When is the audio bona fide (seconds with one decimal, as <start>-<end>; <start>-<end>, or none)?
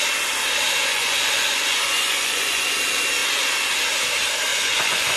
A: 0.0-0.9; 2.7-4.5